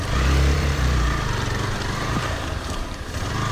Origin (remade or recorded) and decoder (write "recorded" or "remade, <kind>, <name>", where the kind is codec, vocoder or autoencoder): remade, vocoder, BigVGAN v2